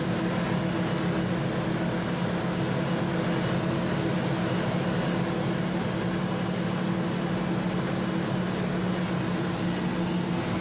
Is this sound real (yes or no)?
yes